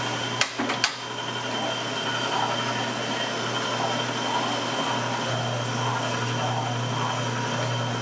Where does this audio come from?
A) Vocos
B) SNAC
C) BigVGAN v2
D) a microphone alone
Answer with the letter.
D